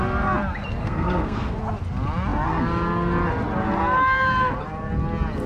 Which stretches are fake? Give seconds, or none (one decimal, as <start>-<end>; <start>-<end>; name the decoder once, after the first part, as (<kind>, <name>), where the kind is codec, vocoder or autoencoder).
0.8-1.6 (codec, SNAC)